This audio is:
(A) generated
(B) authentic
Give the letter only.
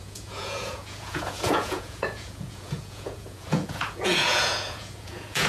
A